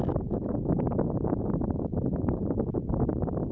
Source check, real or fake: real